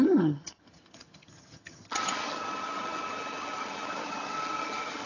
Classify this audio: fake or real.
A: fake